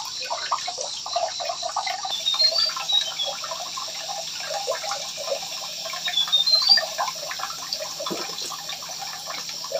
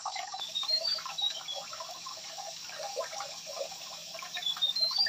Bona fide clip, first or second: first